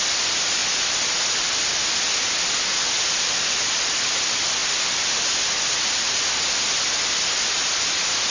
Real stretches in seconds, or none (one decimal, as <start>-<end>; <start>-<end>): 0.0-2.7; 3.3-8.3